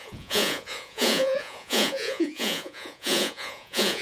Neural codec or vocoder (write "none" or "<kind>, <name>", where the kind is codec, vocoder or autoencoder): vocoder, Vocos